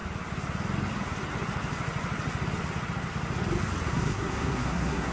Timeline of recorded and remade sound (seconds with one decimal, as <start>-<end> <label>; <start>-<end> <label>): 0.0-3.9 recorded; 3.9-5.1 remade